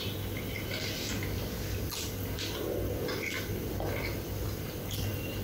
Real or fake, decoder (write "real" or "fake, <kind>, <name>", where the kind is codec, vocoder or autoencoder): real